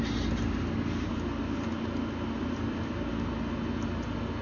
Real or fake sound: real